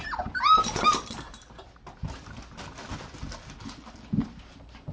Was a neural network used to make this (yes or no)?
no